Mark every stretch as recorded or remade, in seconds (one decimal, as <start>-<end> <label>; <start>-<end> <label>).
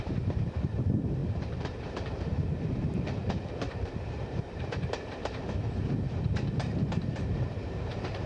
0.0-8.3 remade